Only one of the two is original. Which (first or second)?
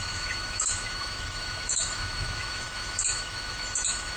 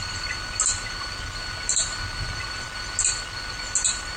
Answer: second